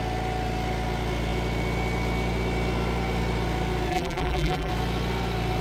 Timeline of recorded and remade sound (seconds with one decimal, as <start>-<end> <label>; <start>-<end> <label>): 0.0-3.9 recorded; 3.9-4.7 remade; 4.7-5.6 recorded